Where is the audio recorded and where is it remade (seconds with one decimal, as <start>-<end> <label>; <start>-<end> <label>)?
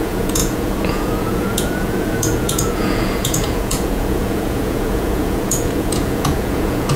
0.0-7.0 remade